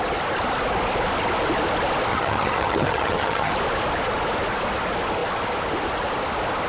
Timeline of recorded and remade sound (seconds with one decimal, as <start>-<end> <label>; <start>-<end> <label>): 0.0-2.1 recorded; 2.1-3.5 remade; 3.5-6.7 recorded

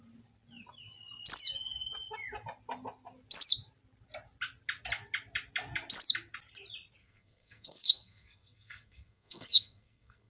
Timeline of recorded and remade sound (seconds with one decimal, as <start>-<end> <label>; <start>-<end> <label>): 0.0-7.0 recorded; 7.0-10.3 remade

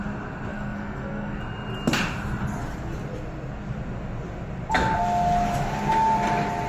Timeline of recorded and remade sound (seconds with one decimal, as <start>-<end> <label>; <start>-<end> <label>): 0.0-0.5 recorded; 0.5-1.4 remade; 1.4-6.7 recorded

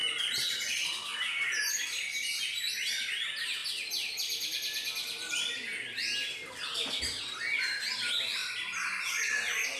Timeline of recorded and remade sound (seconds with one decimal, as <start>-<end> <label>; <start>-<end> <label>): 0.0-9.8 recorded

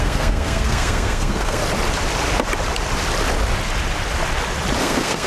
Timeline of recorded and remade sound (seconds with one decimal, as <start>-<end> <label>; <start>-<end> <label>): 0.0-1.6 remade; 1.6-4.8 recorded; 4.8-5.3 remade